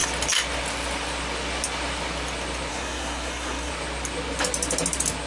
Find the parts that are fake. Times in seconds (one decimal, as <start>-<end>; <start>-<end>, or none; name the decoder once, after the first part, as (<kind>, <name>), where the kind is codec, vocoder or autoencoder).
2.7-3.7 (codec, SNAC)